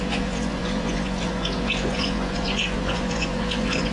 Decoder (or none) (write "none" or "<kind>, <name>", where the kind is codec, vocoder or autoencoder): vocoder, Vocos